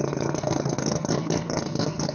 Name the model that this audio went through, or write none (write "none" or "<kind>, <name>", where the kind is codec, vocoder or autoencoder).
codec, SNAC